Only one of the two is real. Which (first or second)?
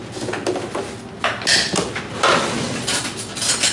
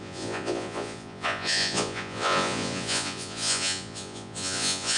first